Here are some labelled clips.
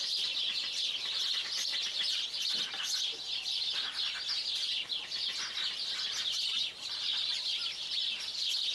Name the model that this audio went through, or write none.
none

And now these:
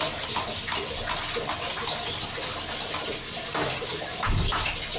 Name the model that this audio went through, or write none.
none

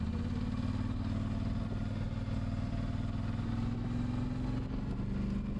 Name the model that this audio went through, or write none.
none